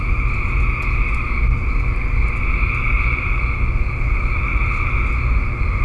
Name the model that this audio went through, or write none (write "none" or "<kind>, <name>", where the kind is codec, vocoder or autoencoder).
none